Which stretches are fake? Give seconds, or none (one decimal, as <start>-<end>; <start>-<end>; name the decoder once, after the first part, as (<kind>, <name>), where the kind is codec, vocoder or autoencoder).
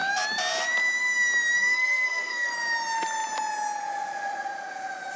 1.6-2.5 (codec, SNAC)